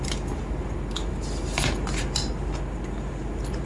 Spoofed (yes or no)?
yes